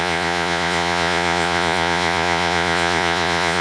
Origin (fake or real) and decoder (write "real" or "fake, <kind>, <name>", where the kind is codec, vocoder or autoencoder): fake, vocoder, Vocos